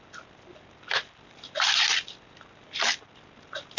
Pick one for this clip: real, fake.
real